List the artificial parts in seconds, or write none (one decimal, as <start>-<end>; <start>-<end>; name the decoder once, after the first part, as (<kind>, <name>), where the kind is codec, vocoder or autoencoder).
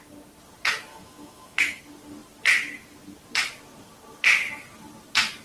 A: 0.9-1.8 (autoencoder, DAC-VAE)